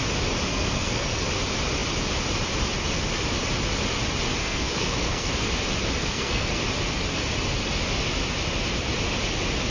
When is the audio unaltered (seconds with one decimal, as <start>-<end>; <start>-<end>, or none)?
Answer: 0.0-0.5; 1.2-4.4; 5.3-6.0; 6.6-9.7